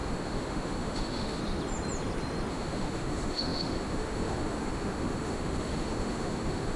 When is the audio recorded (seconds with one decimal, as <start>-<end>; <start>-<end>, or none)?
1.4-2.5